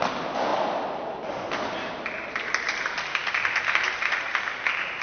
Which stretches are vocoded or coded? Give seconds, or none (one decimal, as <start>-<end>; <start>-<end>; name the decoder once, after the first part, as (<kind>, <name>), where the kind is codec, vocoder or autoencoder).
none